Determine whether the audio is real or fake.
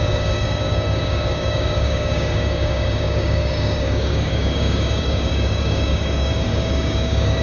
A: fake